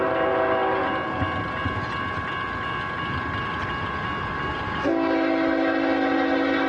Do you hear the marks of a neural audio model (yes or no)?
no